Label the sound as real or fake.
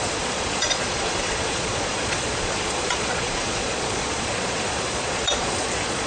fake